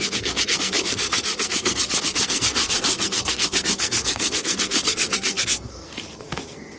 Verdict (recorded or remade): remade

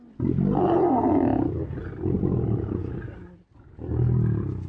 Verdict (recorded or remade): recorded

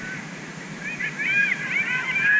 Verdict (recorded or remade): remade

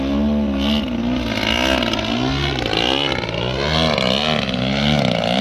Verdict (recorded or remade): recorded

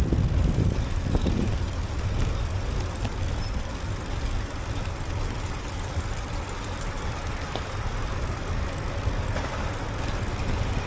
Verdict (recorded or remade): recorded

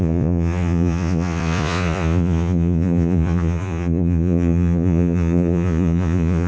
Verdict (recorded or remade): remade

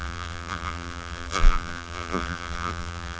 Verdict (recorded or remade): remade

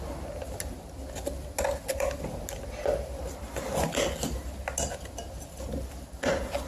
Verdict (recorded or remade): recorded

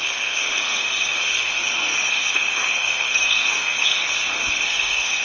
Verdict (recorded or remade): remade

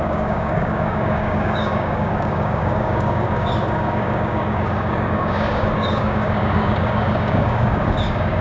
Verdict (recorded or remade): remade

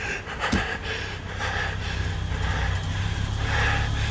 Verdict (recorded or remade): recorded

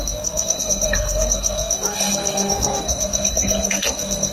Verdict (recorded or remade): remade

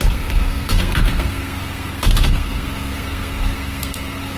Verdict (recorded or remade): remade